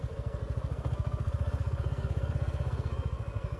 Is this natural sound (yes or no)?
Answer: no